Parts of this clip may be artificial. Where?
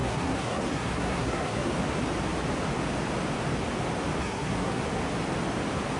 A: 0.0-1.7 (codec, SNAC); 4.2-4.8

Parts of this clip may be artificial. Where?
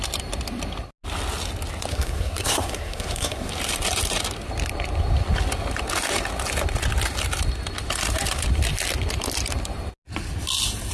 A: 1.9-3.5 (codec, SNAC)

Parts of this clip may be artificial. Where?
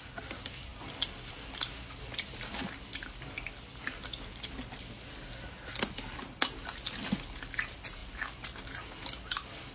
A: none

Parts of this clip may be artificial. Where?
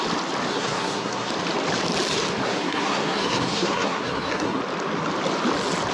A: 0.5-1.3 (codec, SNAC); 2.4-4.6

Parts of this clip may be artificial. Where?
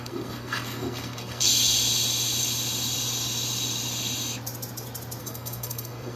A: 0.0-1.5 (codec, SNAC); 5.2-6.2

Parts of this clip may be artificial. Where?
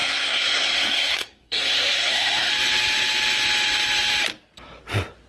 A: 0.0-2.5 (codec, SNAC)